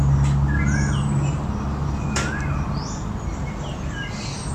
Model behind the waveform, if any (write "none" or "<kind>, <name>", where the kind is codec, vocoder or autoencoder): none